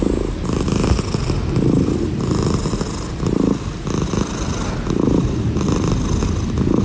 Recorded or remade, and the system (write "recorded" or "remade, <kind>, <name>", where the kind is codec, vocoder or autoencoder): recorded